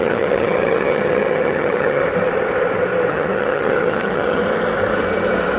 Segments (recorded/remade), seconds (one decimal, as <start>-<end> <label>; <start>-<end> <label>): 0.0-2.0 remade; 2.0-3.1 recorded; 3.1-4.4 remade; 4.4-5.6 recorded